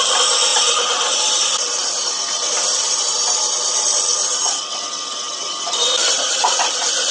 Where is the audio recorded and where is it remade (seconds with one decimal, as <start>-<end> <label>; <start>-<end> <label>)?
0.0-7.1 remade